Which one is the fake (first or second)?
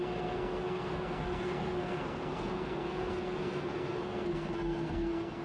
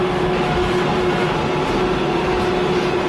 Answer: first